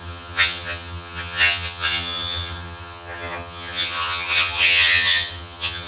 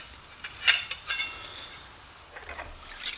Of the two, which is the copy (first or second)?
first